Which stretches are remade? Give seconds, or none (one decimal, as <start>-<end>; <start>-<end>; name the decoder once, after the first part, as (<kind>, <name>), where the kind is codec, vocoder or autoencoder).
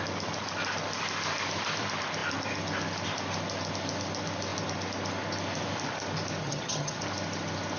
6.4-7.0 (vocoder, HiFi-GAN)